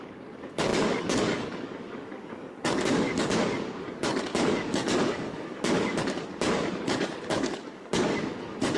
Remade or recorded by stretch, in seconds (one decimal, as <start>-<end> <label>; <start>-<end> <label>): 0.0-8.8 remade

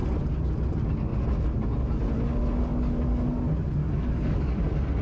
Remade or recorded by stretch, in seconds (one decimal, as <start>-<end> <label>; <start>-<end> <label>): 0.0-2.7 recorded; 2.7-3.4 remade; 3.4-3.8 recorded; 3.8-4.6 remade; 4.6-5.0 recorded